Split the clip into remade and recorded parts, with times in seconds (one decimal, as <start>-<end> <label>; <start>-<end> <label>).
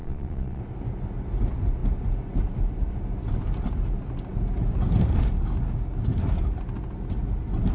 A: 0.0-0.6 remade; 0.6-7.7 recorded